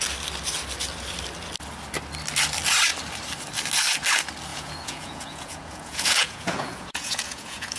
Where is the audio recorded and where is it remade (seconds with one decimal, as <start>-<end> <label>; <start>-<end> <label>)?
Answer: 0.0-4.5 recorded; 4.5-7.8 remade